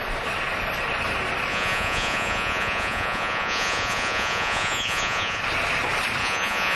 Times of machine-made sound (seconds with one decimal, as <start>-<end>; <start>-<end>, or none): 1.5-5.4; 6.2-6.8